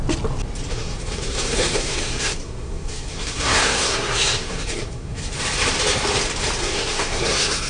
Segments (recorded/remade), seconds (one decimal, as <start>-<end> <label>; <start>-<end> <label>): 0.0-0.7 recorded; 0.7-5.3 remade; 5.3-6.6 recorded; 6.6-7.7 remade